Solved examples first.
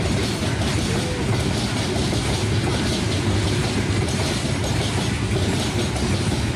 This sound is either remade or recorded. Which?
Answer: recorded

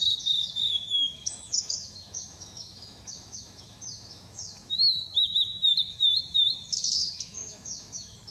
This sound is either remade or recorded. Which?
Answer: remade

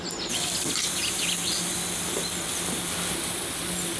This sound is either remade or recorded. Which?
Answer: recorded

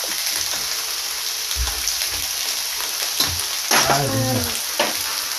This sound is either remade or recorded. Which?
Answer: recorded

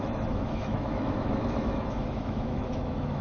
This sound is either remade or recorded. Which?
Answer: remade